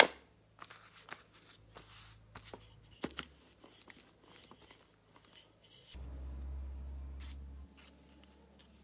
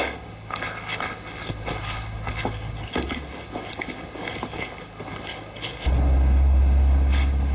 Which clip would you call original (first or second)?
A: first